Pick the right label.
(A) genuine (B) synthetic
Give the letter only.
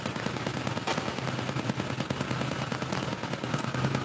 A